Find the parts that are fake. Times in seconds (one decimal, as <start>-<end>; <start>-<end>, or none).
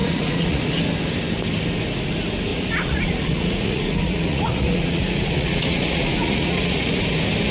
0.0-0.7; 2.5-7.0